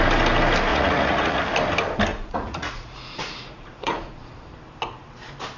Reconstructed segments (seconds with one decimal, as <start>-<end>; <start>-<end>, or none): 0.7-1.4; 2.1-4.1